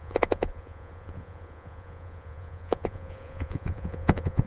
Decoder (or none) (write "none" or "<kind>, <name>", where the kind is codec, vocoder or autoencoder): vocoder, Vocos